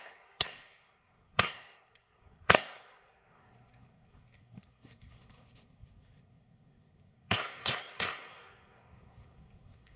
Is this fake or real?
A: fake